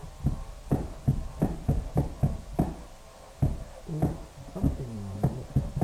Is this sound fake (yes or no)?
no